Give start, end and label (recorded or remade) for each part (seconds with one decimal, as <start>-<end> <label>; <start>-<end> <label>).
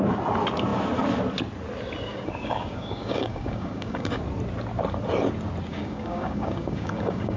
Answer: 0.0-2.1 recorded; 2.1-4.2 remade; 4.2-5.7 recorded; 5.7-7.4 remade